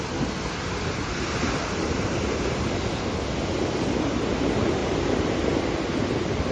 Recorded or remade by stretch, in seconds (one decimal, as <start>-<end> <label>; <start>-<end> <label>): 0.0-4.8 recorded; 4.8-5.4 remade; 5.4-6.5 recorded